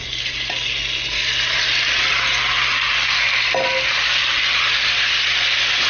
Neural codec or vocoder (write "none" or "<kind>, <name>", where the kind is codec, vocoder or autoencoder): none